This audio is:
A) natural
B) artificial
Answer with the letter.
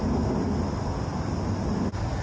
A